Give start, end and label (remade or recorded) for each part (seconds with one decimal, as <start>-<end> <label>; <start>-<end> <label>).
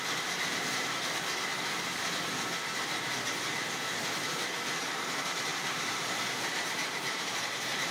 0.0-1.5 remade; 1.5-4.8 recorded; 4.8-7.9 remade